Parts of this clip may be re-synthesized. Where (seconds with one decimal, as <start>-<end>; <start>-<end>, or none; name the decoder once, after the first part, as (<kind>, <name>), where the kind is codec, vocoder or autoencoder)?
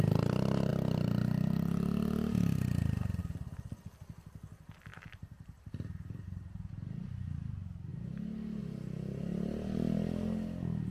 4.9-6.7 (vocoder, BigVGAN v2)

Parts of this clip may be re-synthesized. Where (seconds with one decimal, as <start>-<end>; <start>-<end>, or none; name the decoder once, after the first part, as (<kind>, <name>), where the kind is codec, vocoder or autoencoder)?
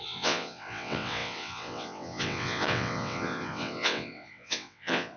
0.0-5.2 (vocoder, WaveNeXt)